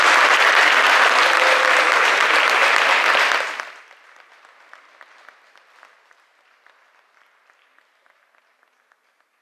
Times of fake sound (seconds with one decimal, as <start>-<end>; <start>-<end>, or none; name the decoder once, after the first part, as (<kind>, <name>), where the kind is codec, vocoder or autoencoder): none